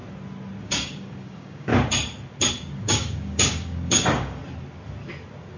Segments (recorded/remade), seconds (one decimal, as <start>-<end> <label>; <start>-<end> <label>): 0.0-0.6 recorded; 0.6-1.7 remade; 1.7-2.5 recorded; 2.5-4.4 remade; 4.4-5.6 recorded